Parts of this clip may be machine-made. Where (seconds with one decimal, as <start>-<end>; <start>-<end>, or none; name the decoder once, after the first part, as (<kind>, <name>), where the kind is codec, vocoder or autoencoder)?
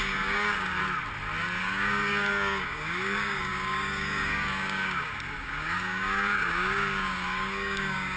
0.0-0.8 (codec, DAC); 1.6-8.2